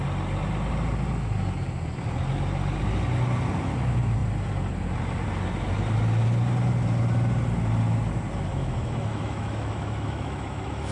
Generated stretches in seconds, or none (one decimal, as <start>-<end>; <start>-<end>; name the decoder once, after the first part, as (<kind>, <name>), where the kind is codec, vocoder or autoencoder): 8.5-10.9 (autoencoder, DAC-VAE)